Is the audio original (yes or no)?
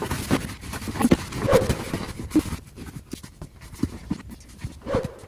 yes